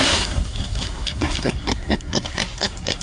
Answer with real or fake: fake